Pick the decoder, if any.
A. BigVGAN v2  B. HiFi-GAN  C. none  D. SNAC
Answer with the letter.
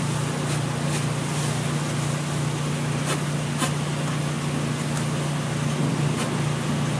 C